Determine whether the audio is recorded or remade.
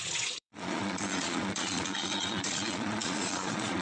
remade